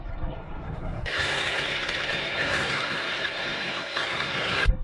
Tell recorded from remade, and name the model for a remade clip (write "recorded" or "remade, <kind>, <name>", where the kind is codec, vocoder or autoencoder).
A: remade, codec, SNAC